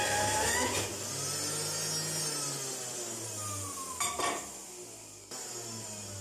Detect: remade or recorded recorded